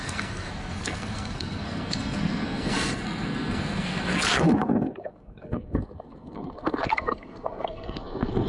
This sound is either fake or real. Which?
fake